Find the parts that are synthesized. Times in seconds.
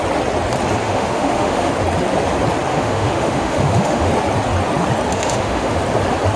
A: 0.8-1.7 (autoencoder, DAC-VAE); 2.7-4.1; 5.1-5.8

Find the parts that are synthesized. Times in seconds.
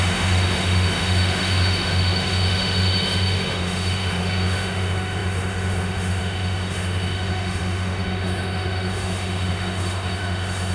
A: 0.0-10.7 (autoencoder, DAC-VAE)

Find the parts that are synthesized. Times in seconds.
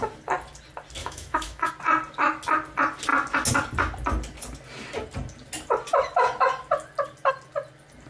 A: 1.0-1.7 (autoencoder, DAC-VAE)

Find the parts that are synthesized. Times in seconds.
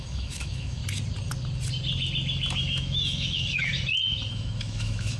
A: 0.0-0.8 (autoencoder, DAC-VAE); 2.6-3.7; 4.3-5.2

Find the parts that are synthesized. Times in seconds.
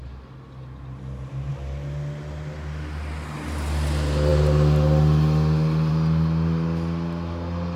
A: none